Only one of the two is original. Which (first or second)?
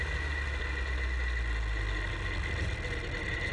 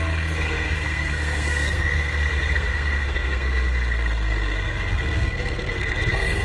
first